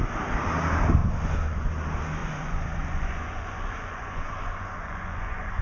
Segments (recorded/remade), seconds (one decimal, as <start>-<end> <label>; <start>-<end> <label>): 0.0-1.0 recorded; 1.0-1.7 remade; 1.7-2.2 recorded; 2.2-5.6 remade